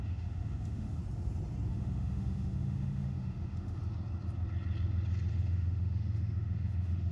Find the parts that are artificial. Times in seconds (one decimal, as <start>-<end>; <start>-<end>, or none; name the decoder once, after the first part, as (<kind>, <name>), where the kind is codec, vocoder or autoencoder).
0.0-1.0 (autoencoder, DAC-VAE); 1.7-3.8; 5.3-7.1